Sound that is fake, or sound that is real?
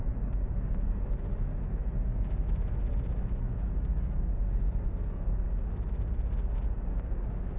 real